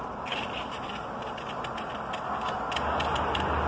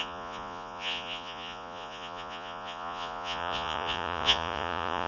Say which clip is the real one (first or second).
first